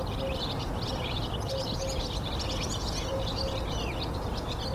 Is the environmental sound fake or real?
real